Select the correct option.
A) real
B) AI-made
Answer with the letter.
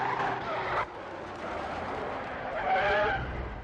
A